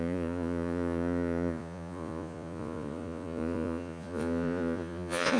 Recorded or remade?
remade